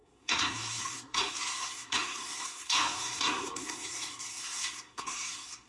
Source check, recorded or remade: remade